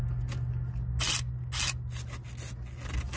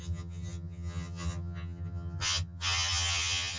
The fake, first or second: second